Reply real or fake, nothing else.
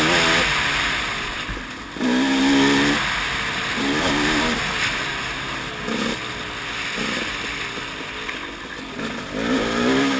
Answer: real